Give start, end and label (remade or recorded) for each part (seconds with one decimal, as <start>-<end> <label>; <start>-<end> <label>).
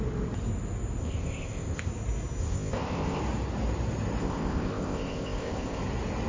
0.0-1.0 recorded; 1.0-1.9 remade; 1.9-2.4 recorded; 2.4-3.2 remade; 3.2-4.2 recorded; 4.2-5.8 remade; 5.8-6.3 recorded